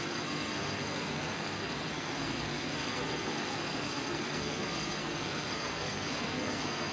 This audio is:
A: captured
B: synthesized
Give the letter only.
B